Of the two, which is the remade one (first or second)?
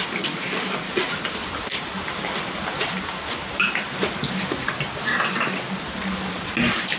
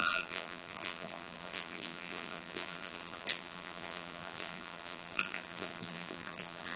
second